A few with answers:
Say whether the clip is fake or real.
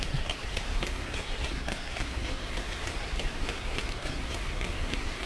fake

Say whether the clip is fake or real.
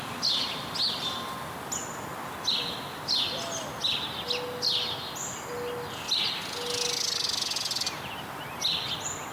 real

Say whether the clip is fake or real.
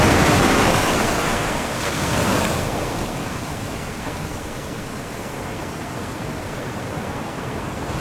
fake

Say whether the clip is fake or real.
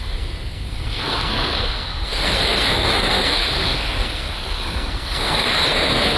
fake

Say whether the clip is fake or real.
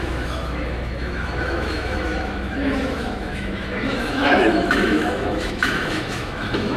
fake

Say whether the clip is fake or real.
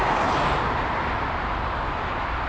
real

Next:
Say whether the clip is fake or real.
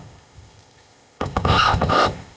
fake